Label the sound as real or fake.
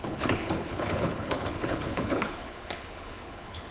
fake